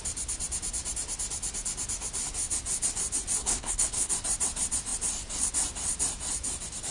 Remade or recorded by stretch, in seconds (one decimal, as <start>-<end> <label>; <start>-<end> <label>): 0.0-3.4 recorded; 3.4-4.1 remade; 4.1-6.9 recorded